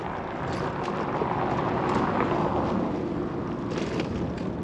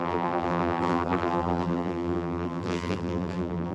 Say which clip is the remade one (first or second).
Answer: second